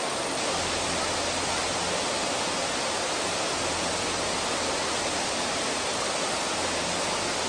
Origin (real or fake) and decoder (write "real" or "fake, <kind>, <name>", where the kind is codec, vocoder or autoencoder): real